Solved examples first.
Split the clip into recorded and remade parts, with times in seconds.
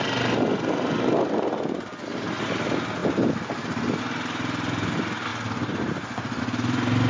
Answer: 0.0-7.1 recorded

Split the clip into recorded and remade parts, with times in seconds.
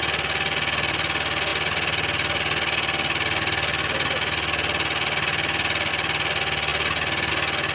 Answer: 0.0-7.7 recorded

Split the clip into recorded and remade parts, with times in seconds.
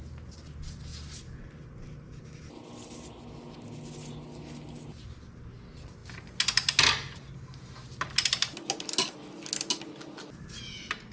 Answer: 0.0-11.1 recorded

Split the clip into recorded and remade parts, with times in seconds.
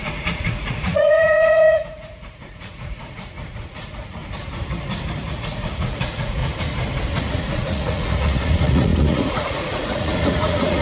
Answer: 0.0-4.2 remade; 4.2-5.3 recorded; 5.3-6.4 remade; 6.4-7.2 recorded; 7.2-10.8 remade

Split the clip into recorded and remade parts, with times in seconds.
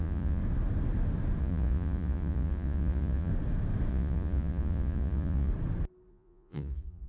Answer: 0.0-0.4 remade; 0.4-1.4 recorded; 1.4-3.3 remade; 3.3-3.9 recorded; 3.9-5.5 remade; 5.5-6.1 recorded; 6.1-7.1 remade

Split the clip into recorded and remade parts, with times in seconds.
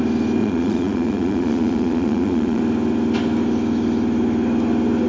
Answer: 0.0-0.4 recorded; 0.4-2.6 remade; 2.6-5.1 recorded